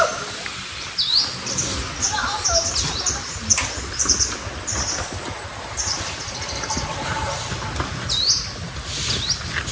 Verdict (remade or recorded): recorded